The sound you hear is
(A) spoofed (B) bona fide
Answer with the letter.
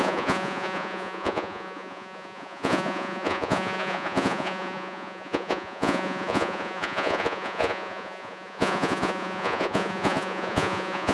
A